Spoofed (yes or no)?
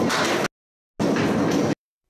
no